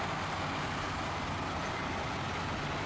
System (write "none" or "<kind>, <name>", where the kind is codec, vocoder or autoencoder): none